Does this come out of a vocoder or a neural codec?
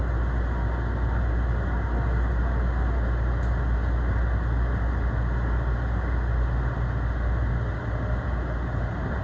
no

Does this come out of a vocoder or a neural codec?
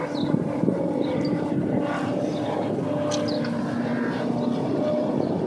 no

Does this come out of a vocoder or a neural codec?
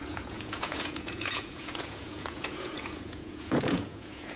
yes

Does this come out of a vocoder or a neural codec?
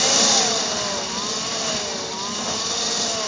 no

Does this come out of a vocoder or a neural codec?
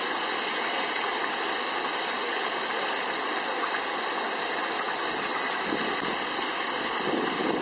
no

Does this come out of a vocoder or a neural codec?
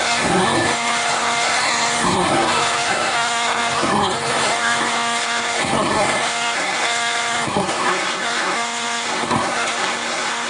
yes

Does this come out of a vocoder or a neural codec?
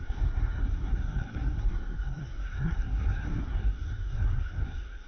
yes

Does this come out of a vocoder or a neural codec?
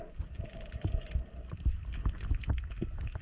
no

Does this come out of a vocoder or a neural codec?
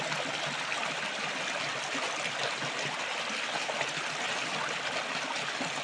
no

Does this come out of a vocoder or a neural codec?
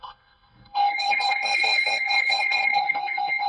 yes